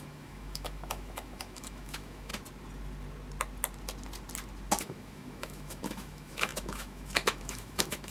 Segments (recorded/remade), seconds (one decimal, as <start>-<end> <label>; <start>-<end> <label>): 0.0-2.3 remade; 2.3-4.8 recorded; 4.8-8.1 remade